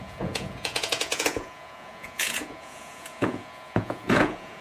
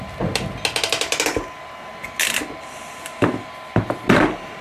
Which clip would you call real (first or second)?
second